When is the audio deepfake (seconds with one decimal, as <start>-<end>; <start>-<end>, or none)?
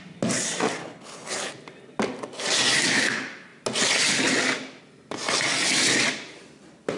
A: 0.8-1.5